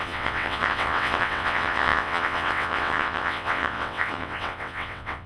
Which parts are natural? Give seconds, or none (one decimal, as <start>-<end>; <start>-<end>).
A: none